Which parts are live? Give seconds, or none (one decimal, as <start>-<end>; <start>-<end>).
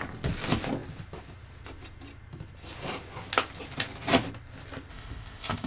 0.0-4.9